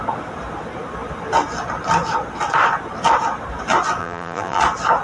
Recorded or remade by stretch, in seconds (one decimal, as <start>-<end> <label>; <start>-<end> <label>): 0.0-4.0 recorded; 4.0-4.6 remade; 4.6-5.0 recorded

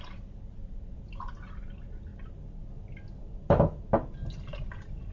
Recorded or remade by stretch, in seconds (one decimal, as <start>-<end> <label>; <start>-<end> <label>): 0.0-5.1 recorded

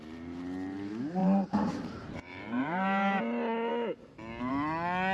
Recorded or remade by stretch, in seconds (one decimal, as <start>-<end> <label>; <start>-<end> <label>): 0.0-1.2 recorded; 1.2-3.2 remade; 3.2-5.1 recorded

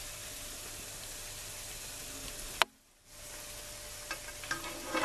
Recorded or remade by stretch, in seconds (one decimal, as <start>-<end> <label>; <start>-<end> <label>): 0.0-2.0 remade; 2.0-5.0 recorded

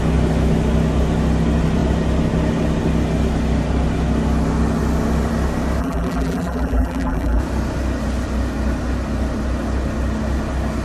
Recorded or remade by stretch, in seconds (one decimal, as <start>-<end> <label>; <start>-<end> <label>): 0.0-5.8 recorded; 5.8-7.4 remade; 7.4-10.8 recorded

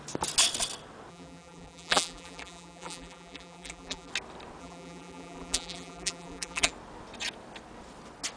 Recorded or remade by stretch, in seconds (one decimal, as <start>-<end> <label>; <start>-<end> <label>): 0.0-1.1 recorded; 1.1-4.1 remade; 4.1-4.6 recorded; 4.6-6.7 remade; 6.7-8.4 recorded

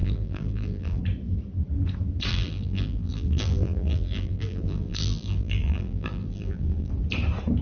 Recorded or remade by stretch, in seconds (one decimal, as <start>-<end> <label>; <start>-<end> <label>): 0.0-1.0 remade; 1.0-2.3 recorded; 2.3-6.9 remade; 6.9-7.6 recorded